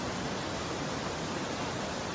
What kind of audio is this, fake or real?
real